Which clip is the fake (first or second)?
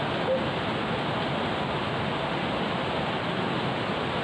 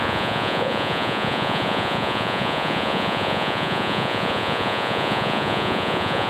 second